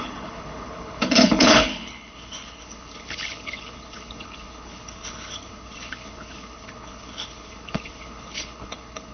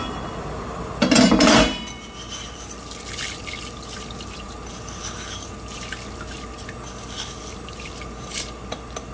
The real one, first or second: second